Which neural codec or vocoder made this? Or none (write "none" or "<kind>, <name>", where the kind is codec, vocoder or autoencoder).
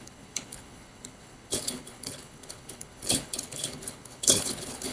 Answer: codec, HILCodec